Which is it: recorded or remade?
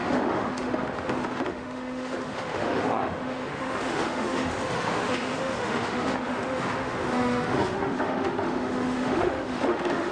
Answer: remade